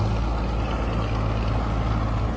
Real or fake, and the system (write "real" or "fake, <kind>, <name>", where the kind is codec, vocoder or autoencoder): real